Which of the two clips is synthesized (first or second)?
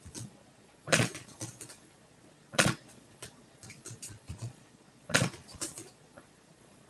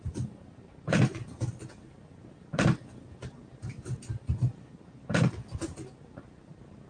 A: first